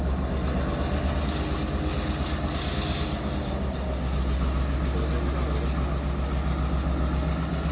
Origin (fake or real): real